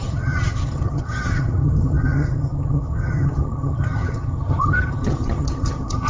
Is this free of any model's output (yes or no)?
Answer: no